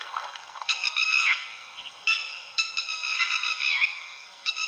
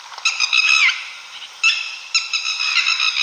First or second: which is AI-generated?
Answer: first